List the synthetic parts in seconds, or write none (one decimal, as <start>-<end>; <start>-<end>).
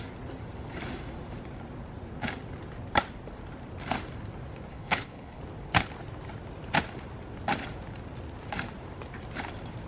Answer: 4.7-5.4